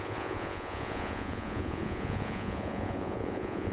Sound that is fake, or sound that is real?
fake